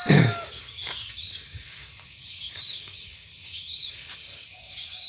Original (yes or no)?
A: no